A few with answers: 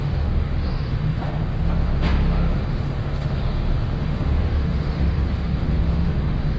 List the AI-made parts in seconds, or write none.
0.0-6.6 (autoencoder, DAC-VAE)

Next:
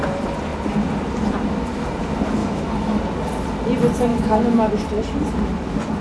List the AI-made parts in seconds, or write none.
2.4-3.0 (autoencoder, DAC-VAE); 4.1-4.7